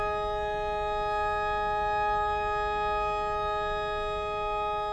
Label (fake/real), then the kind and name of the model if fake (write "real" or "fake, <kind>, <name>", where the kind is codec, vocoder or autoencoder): real